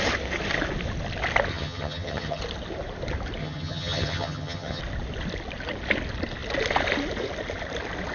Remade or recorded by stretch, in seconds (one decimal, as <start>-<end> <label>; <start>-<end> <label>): 0.0-1.5 recorded; 1.5-2.4 remade; 2.4-3.4 recorded; 3.4-4.8 remade; 4.8-8.1 recorded